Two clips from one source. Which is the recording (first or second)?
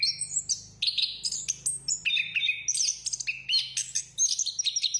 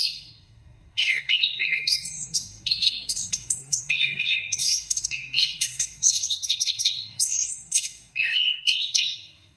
first